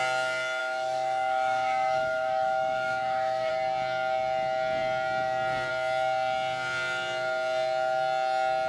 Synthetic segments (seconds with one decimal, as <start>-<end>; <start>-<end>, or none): 0.6-3.5